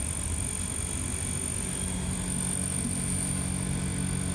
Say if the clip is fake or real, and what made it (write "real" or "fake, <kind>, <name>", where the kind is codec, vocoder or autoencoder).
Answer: real